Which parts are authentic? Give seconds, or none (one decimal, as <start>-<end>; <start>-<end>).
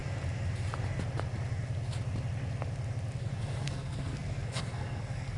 0.0-3.2